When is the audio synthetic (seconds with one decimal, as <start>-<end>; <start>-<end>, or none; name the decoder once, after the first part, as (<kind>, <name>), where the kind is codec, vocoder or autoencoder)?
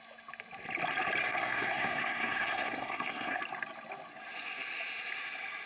1.2-3.4 (codec, SNAC)